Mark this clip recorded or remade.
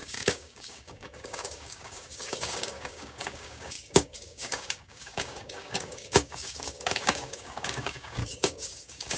remade